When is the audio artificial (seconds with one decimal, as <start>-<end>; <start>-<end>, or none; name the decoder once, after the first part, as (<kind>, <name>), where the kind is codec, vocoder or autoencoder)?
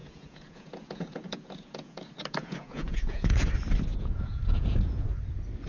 0.0-3.4 (vocoder, Vocos); 3.9-5.1